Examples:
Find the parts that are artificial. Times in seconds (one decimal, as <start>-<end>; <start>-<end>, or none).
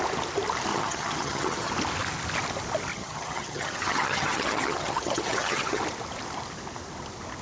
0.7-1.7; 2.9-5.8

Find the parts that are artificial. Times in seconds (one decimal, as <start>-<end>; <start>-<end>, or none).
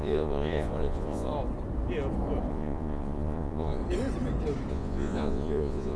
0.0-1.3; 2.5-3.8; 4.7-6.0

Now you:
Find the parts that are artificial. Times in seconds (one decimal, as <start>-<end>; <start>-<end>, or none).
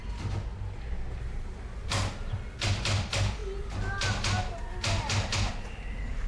none